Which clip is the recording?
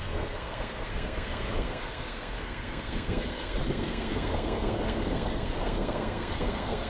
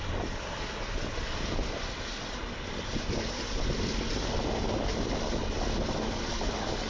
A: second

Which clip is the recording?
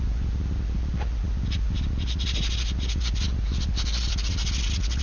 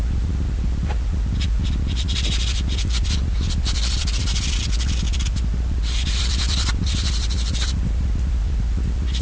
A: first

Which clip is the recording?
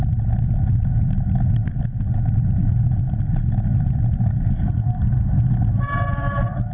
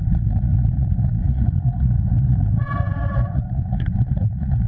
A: first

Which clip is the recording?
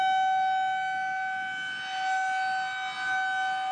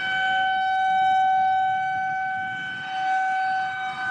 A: first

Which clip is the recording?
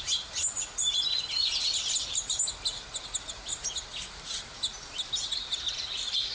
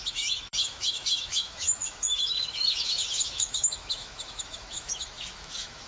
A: first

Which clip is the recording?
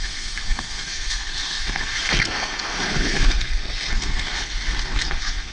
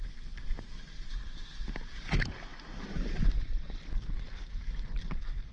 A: second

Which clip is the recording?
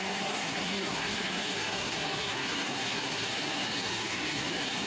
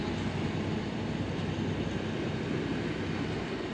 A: second